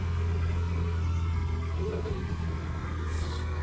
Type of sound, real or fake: fake